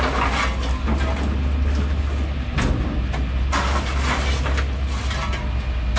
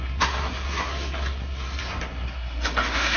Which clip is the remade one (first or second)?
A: second